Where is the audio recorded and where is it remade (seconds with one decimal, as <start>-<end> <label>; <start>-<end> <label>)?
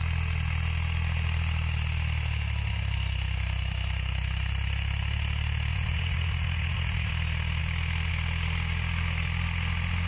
0.0-5.7 recorded; 5.7-7.1 remade; 7.1-10.1 recorded